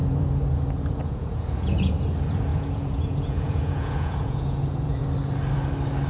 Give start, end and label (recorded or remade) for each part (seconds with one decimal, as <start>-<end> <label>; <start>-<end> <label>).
0.0-1.9 remade; 1.9-2.5 recorded; 2.5-5.0 remade; 5.0-6.1 recorded